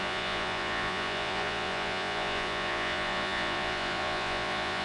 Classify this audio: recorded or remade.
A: remade